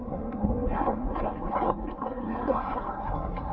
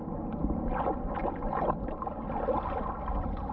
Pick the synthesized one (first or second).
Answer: first